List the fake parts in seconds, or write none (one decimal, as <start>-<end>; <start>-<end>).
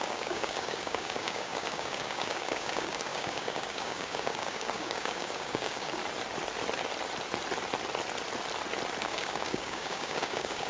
0.0-6.0; 9.0-10.7